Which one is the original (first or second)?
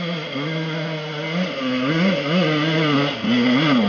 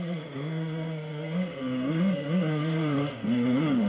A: first